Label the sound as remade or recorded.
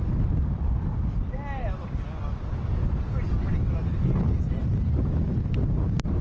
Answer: recorded